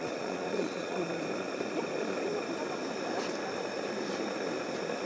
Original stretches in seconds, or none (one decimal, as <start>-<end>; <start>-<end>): 1.2-5.1